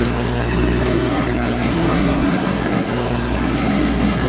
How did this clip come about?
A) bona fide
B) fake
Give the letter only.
B